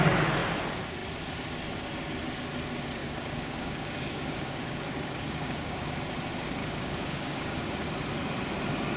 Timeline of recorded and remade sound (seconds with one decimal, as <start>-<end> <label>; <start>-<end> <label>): 0.0-3.0 recorded; 3.0-6.0 remade; 6.0-6.6 recorded; 6.6-7.7 remade; 7.7-9.0 recorded